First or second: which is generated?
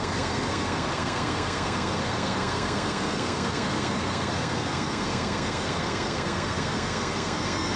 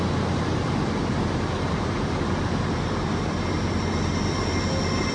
first